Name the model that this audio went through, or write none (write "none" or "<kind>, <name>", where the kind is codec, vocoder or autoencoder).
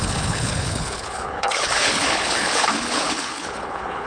codec, HILCodec